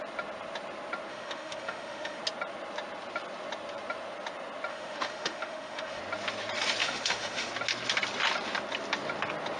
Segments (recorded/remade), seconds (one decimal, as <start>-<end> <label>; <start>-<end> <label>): 0.0-1.1 recorded; 1.1-2.2 remade; 2.2-4.7 recorded; 4.7-6.0 remade; 6.0-6.8 recorded; 6.8-7.5 remade; 7.5-9.6 recorded